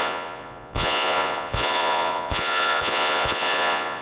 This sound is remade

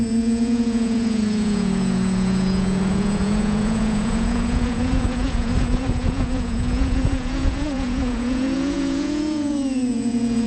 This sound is remade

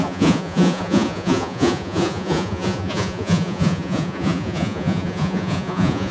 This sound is remade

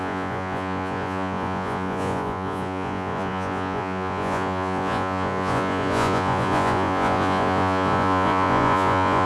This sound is remade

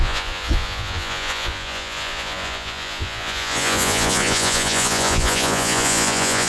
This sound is remade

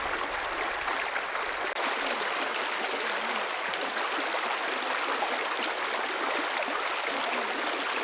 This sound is recorded